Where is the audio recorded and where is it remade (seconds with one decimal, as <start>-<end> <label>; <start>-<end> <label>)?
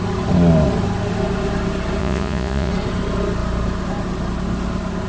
0.0-2.0 recorded; 2.0-2.7 remade; 2.7-5.1 recorded